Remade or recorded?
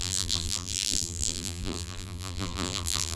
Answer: remade